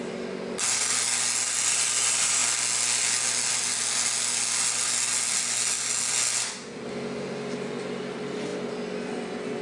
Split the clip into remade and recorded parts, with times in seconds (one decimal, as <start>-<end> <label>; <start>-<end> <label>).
0.0-9.6 recorded